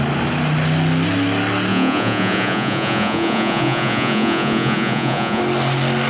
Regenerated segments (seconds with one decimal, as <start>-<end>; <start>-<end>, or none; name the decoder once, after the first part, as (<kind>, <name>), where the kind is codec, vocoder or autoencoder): 1.7-5.4 (vocoder, Vocos)